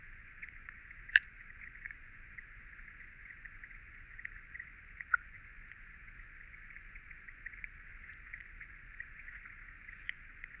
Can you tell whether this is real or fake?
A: fake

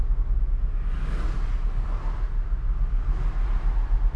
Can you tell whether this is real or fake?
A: real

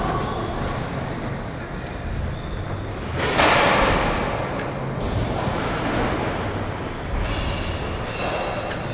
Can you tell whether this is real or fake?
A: real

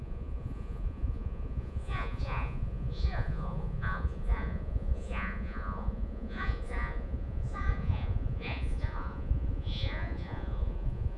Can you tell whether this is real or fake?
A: fake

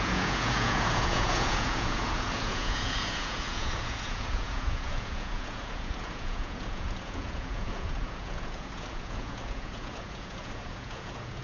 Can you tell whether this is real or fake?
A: fake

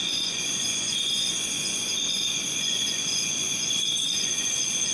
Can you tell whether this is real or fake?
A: fake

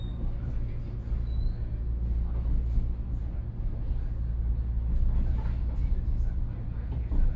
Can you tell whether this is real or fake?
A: real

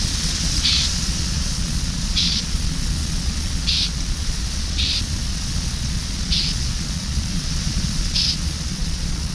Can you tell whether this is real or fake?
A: fake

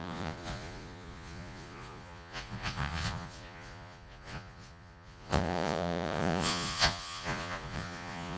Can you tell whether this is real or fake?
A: fake